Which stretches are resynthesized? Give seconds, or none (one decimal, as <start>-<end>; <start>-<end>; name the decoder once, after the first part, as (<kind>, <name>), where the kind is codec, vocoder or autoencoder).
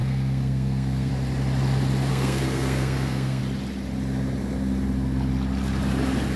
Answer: 0.0-1.1 (codec, SNAC); 2.1-3.4